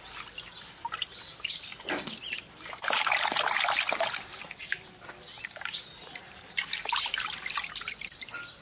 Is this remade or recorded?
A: recorded